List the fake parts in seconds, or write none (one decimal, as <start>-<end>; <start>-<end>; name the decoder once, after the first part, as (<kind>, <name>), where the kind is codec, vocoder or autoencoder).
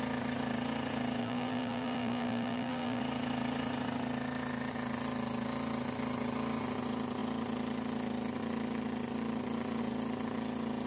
1.2-3.0 (vocoder, BigVGAN v2)